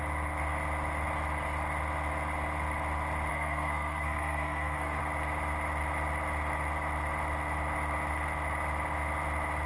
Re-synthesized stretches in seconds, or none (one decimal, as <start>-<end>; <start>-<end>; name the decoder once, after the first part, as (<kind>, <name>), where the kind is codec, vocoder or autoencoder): 3.3-5.0 (codec, SNAC)